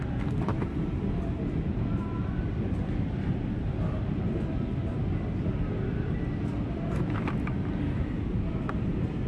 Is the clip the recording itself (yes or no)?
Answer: yes